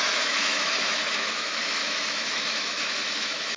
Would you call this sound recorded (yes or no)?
no